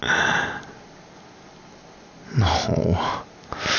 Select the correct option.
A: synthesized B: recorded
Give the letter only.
B